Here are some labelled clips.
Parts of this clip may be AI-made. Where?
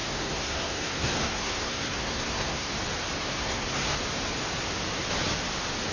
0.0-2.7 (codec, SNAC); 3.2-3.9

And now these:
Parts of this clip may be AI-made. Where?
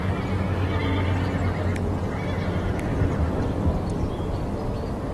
0.8-3.9 (vocoder, BigVGAN v2)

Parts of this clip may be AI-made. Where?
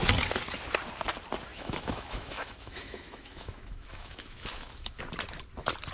1.5-5.0 (autoencoder, DAC-VAE)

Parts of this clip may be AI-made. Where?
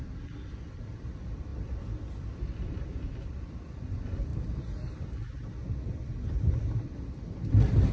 0.0-1.5 (vocoder, BigVGAN v2); 2.4-4.3; 5.7-7.9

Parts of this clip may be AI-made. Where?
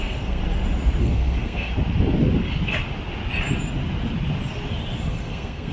0.0-0.4 (codec, SNAC); 1.0-1.7; 5.0-5.7